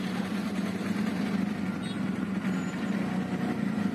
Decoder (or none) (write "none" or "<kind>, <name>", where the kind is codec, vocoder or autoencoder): none